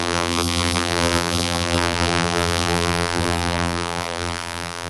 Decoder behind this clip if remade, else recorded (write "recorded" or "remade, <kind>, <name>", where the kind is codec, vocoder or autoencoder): remade, vocoder, BigVGAN v2